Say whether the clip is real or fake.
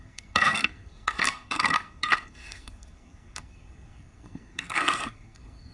fake